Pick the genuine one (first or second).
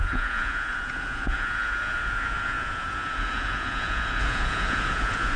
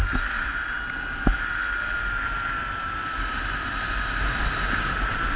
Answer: second